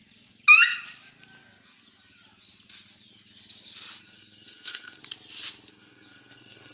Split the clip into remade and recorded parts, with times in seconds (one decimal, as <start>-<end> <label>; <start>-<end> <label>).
0.0-4.0 recorded; 4.0-5.0 remade; 5.0-5.7 recorded; 5.7-6.7 remade